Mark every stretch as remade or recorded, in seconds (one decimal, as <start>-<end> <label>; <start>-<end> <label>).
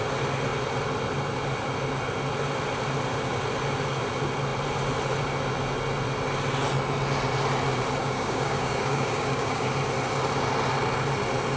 0.0-8.0 recorded; 8.0-9.7 remade; 9.7-11.6 recorded